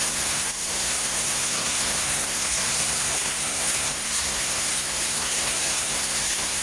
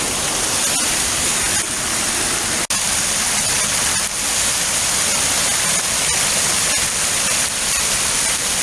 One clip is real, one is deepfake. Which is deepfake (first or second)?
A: first